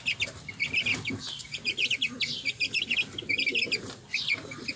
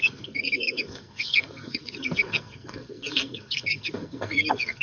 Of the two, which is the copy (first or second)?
second